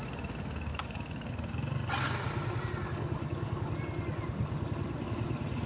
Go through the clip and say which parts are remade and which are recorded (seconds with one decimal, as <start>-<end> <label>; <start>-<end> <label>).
0.0-0.7 recorded; 0.7-1.3 remade; 1.3-2.9 recorded; 2.9-3.7 remade; 3.7-5.7 recorded